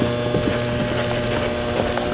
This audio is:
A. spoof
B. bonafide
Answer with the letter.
B